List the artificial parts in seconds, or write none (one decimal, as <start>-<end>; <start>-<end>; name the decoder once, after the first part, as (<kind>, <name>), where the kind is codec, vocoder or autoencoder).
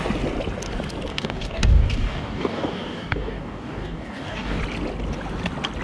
1.1-4.6 (codec, DAC)